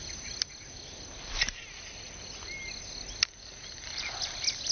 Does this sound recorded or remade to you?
recorded